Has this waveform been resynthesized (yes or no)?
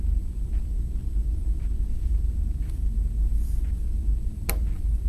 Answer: no